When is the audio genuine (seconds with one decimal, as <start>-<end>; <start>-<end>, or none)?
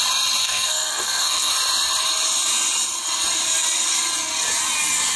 0.0-0.4; 1.5-5.2